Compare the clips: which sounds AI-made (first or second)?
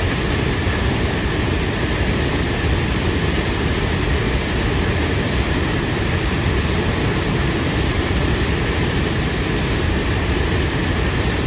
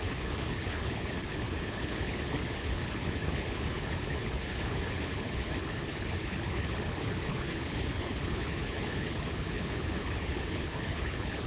second